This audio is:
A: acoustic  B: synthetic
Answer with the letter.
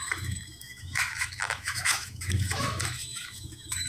B